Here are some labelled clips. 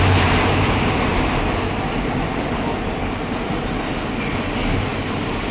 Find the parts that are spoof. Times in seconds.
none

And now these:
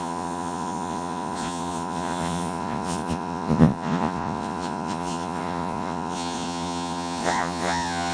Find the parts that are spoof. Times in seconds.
0.0-8.1 (vocoder, Vocos)

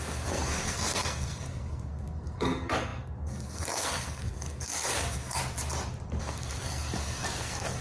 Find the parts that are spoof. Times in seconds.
0.0-5.4 (codec, SNAC); 6.2-7.8